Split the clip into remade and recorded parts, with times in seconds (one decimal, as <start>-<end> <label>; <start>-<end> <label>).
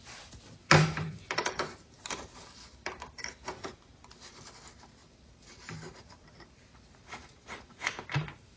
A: 0.0-0.6 recorded; 0.6-3.7 remade; 3.7-5.0 recorded; 5.0-8.6 remade